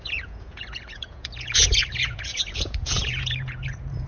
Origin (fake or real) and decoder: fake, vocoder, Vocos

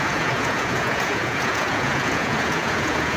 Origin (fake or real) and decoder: fake, vocoder, Vocos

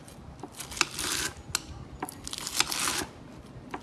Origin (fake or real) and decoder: real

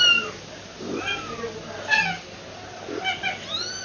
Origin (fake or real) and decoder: real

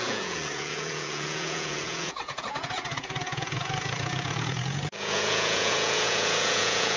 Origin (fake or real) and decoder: fake, vocoder, Vocos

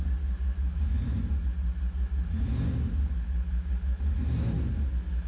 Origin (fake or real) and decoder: real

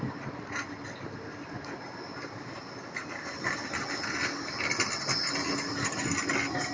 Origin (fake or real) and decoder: real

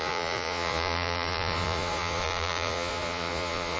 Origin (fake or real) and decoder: fake, vocoder, Vocos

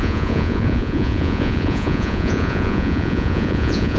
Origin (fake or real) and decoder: fake, vocoder, Vocos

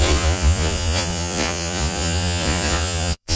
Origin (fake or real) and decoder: fake, vocoder, Vocos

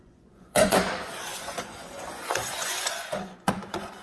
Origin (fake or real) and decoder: fake, vocoder, Vocos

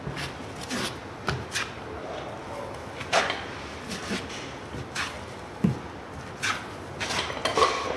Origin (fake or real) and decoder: real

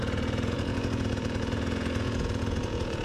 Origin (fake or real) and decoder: fake, vocoder, Vocos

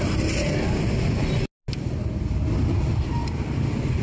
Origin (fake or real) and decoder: real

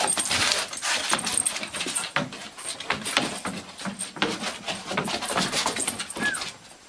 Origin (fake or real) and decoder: real